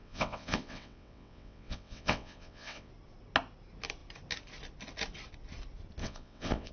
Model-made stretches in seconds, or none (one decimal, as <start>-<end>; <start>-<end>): 0.0-2.9; 6.0-6.7